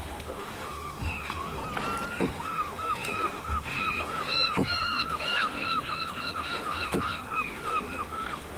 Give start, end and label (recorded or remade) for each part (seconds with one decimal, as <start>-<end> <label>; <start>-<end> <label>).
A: 0.0-1.6 remade; 1.6-2.1 recorded; 2.1-8.6 remade